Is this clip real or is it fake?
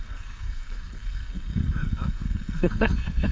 fake